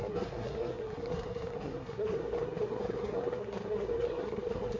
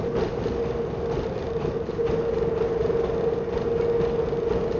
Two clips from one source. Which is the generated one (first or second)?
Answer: first